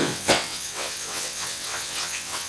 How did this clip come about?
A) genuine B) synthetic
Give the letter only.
B